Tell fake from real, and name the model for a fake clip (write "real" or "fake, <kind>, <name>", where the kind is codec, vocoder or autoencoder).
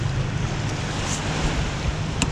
real